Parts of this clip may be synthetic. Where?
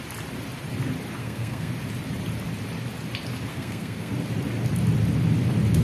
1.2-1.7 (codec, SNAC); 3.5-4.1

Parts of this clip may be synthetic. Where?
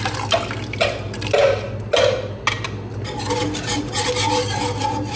none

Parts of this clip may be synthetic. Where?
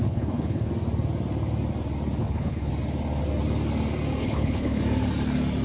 0.0-0.7 (codec, HILCodec); 2.2-2.7; 4.2-4.8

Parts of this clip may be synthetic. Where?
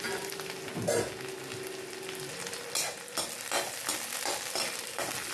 none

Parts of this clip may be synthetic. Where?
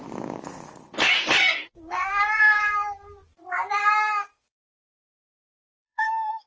1.4-2.6 (codec, SNAC); 4.3-6.5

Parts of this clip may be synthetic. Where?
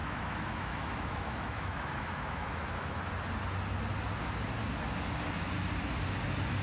0.0-3.0 (autoencoder, DAC-VAE)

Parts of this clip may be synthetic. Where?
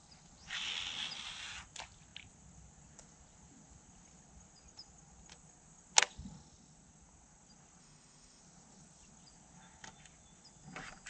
7.8-8.4 (autoencoder, DAC-VAE)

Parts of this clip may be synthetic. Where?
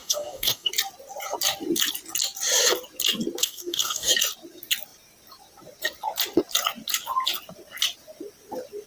0.0-0.7 (codec, DAC); 3.4-4.1